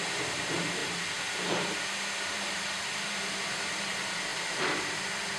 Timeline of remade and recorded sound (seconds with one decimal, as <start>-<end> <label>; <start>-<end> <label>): 0.0-5.4 remade